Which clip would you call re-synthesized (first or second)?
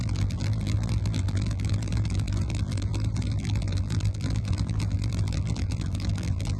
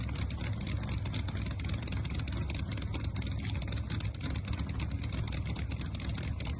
first